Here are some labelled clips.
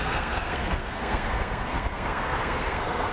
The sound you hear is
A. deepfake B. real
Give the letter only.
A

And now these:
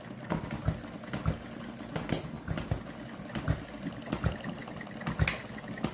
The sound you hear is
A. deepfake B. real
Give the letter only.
B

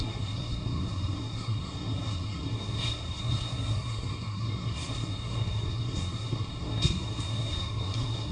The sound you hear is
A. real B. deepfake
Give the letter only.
B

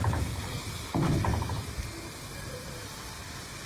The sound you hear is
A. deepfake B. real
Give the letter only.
B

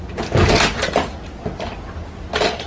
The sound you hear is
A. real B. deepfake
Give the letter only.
A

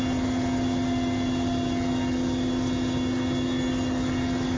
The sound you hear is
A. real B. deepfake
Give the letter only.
A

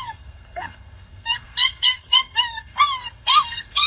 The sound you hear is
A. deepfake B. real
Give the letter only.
A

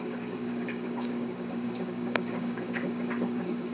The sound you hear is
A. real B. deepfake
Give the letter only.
B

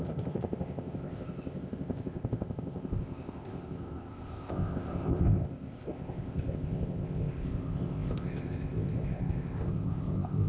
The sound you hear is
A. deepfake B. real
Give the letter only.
A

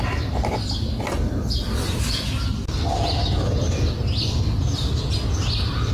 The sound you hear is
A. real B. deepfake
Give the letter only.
A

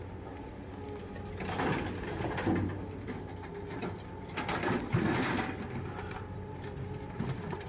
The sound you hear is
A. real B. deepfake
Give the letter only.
A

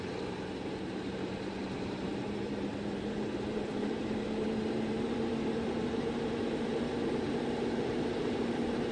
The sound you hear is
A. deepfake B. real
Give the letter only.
A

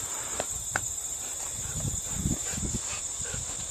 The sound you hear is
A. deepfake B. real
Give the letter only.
A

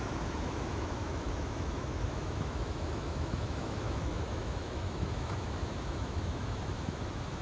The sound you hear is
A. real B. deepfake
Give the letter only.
B